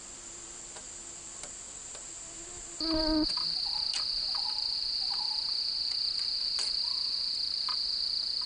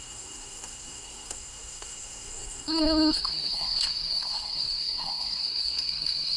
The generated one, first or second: second